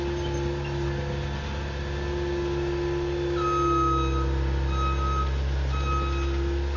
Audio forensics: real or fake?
real